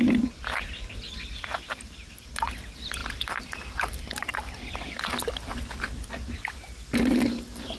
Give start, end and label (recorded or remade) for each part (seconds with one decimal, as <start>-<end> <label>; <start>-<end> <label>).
0.0-3.0 recorded; 3.0-5.3 remade; 5.3-7.8 recorded